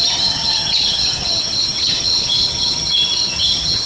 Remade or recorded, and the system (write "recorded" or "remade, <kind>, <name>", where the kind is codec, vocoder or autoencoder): remade, vocoder, HiFi-GAN